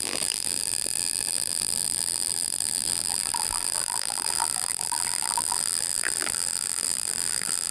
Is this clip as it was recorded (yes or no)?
no